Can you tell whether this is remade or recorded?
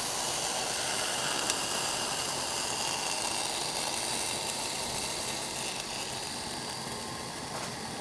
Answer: recorded